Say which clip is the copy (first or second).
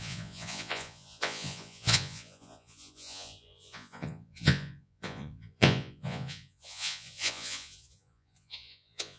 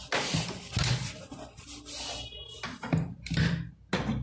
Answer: first